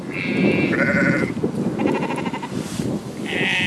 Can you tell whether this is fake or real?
real